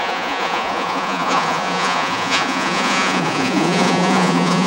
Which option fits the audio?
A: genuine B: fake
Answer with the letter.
B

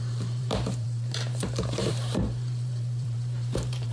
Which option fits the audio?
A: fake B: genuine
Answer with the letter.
A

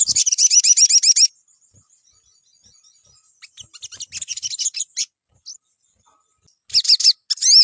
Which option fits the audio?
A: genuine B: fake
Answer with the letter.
A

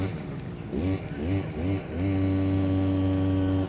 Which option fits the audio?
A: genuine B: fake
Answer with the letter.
A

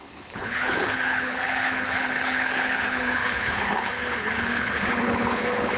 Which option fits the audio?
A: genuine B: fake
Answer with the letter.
B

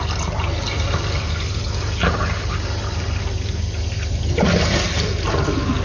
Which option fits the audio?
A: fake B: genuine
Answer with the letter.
B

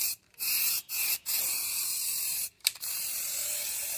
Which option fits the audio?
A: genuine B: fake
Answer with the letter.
B